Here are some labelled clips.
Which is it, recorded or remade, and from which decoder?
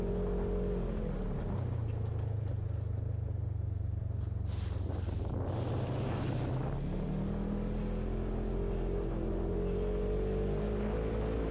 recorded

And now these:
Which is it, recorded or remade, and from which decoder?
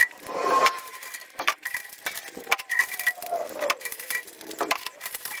remade, vocoder, BigVGAN v2